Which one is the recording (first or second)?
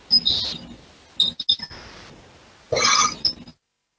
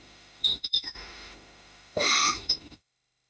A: first